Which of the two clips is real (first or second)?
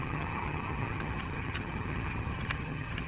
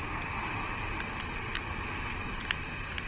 second